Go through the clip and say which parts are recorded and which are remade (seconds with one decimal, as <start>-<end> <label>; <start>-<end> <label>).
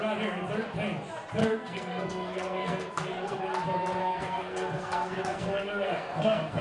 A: 0.0-1.4 recorded; 1.4-3.4 remade; 3.4-4.0 recorded; 4.0-6.6 remade